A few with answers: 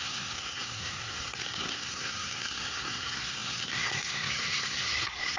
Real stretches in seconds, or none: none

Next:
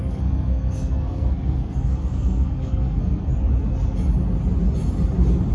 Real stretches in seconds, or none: 3.3-5.5

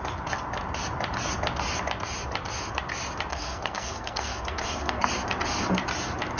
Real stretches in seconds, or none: 0.0-3.3; 5.1-6.4

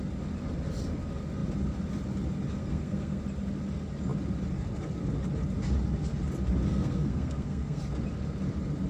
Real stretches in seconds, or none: 0.0-2.6; 3.2-6.7; 7.8-8.9

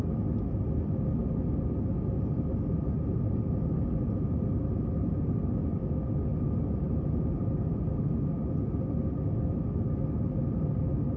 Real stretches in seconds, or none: 0.0-11.2